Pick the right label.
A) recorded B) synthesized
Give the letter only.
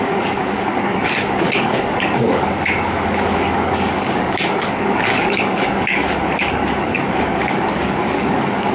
B